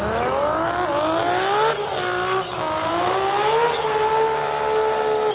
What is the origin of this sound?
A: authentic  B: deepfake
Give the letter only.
A